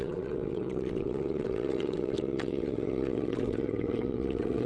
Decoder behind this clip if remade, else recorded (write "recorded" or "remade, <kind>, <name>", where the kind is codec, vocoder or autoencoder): remade, vocoder, WaveNeXt